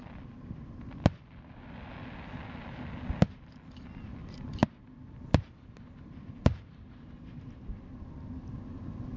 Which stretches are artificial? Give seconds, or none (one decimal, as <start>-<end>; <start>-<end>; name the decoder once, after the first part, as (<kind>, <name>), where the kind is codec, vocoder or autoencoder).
none